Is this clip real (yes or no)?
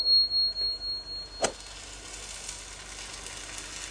yes